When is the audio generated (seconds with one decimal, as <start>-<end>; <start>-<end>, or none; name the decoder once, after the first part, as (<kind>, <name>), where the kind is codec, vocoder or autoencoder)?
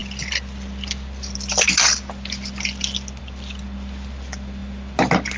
none